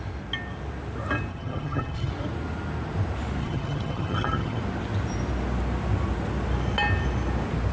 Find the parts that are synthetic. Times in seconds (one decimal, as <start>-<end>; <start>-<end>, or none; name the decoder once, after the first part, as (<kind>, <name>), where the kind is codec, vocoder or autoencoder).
1.3-2.1 (vocoder, HiFi-GAN); 3.4-4.6